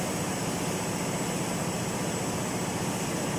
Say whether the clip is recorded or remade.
remade